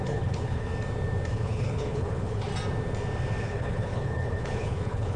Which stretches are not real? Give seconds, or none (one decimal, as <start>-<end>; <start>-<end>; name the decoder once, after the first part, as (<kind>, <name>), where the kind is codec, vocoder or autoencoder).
0.0-0.7 (codec, HILCodec); 1.3-2.5; 3.4-5.2